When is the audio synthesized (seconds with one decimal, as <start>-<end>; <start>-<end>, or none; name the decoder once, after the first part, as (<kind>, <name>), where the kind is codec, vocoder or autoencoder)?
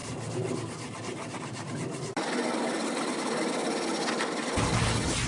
none